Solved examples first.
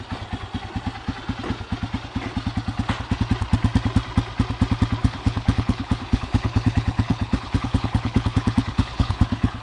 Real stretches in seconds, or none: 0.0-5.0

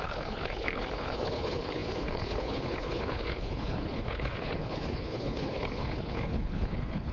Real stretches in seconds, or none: none

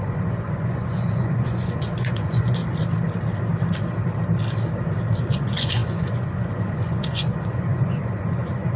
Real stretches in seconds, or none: 2.6-5.2

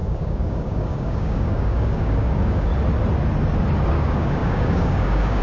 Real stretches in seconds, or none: 2.7-3.9

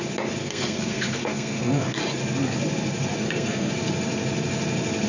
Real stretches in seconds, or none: 0.0-0.4; 2.0-3.2; 3.7-5.1

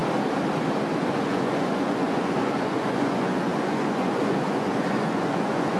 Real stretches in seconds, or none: 0.0-1.0

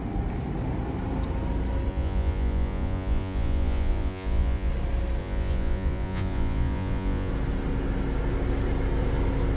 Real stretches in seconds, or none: 0.0-1.9; 4.7-5.2; 7.3-9.6

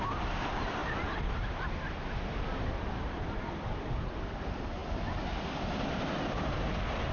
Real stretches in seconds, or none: 0.0-7.1